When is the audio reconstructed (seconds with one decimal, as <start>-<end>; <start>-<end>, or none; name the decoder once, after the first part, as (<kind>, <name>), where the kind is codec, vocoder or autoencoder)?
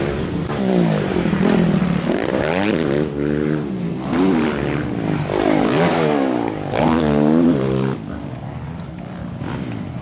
0.0-1.1 (codec, DAC); 5.4-9.2